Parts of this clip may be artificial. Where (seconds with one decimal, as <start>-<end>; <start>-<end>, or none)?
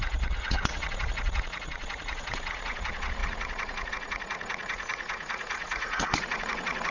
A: 0.0-6.9